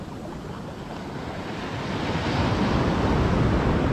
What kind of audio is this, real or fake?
real